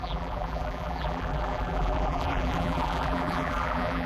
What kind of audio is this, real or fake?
fake